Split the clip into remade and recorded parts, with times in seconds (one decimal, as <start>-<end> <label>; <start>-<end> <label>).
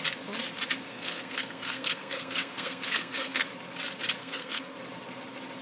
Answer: 0.0-0.9 recorded; 0.9-3.4 remade; 3.4-4.2 recorded; 4.2-4.8 remade; 4.8-5.6 recorded